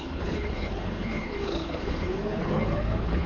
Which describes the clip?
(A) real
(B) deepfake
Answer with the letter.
B